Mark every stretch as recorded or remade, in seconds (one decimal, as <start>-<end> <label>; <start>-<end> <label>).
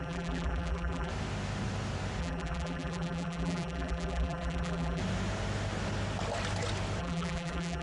0.0-1.1 remade; 1.1-2.2 recorded; 2.2-5.0 remade; 5.0-7.0 recorded; 7.0-7.8 remade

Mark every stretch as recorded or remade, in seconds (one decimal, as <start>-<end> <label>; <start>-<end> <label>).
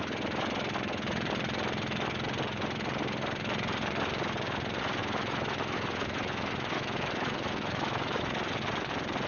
0.0-5.0 recorded; 5.0-8.2 remade; 8.2-9.3 recorded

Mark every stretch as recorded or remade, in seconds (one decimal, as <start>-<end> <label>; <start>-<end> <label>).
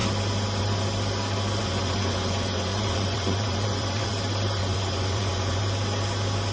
0.0-1.6 recorded; 1.6-4.1 remade; 4.1-4.6 recorded; 4.6-5.6 remade; 5.6-6.5 recorded